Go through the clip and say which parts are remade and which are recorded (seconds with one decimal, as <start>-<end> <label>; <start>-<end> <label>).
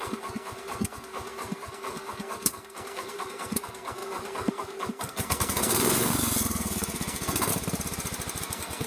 0.0-7.5 remade; 7.5-8.4 recorded; 8.4-8.9 remade